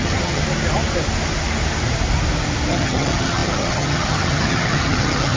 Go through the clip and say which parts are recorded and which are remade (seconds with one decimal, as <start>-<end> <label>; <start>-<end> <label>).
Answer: 0.0-0.4 remade; 0.4-2.7 recorded; 2.7-5.4 remade

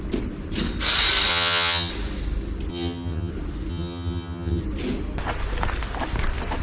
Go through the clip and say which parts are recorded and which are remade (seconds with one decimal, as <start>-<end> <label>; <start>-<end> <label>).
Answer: 0.0-1.3 recorded; 1.3-1.9 remade; 1.9-2.7 recorded; 2.7-3.3 remade; 3.3-3.7 recorded; 3.7-4.6 remade; 4.6-6.6 recorded

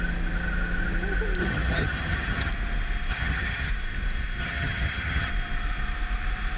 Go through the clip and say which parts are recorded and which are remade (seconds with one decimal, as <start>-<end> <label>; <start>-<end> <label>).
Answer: 0.0-1.4 recorded; 1.4-2.5 remade; 2.5-3.1 recorded; 3.1-3.7 remade; 3.7-4.4 recorded; 4.4-5.3 remade; 5.3-6.6 recorded

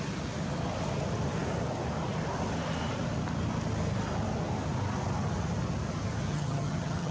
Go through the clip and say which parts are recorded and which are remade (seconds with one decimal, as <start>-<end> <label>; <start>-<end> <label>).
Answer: 0.0-6.3 recorded; 6.3-7.1 remade

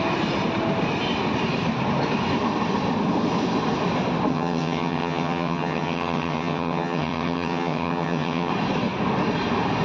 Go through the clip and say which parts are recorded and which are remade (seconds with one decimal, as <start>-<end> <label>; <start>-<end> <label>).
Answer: 0.0-4.3 recorded; 4.3-8.5 remade; 8.5-9.8 recorded

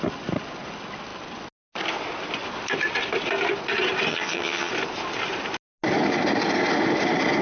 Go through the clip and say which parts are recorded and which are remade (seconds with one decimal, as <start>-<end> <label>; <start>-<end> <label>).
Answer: 0.0-4.1 recorded; 4.1-4.7 remade; 4.7-7.4 recorded

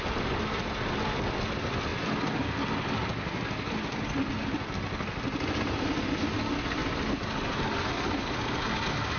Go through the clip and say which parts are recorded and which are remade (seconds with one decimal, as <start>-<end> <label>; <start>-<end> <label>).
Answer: 0.0-9.2 recorded